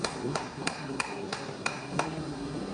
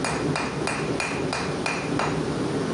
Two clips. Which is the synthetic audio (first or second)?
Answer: first